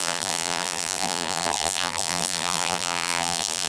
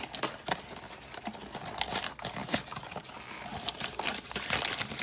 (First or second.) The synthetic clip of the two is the first